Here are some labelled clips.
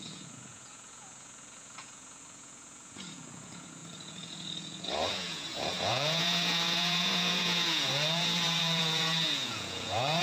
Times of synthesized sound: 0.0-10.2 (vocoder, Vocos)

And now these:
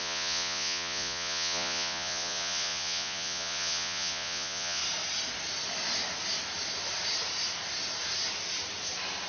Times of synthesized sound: 0.0-4.8 (vocoder, Vocos)

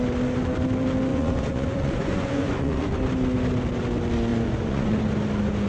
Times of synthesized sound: 1.1-3.0 (vocoder, Vocos); 4.3-5.0

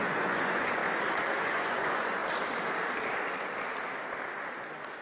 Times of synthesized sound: 0.0-0.8 (vocoder, Vocos); 1.4-2.2

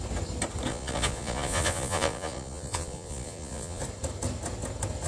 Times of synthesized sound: 0.7-3.8 (vocoder, Vocos)